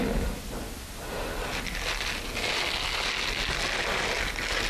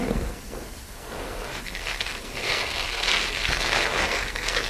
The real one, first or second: first